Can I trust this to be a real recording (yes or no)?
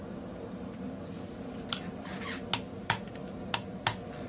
yes